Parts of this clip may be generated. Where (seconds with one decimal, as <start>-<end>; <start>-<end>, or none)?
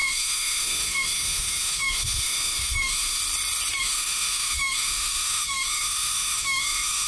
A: 0.0-3.2; 3.8-7.1